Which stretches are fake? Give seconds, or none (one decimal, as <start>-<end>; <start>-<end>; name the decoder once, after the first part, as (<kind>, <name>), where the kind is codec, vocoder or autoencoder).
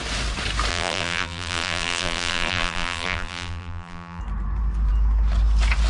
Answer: 0.7-4.2 (vocoder, BigVGAN v2)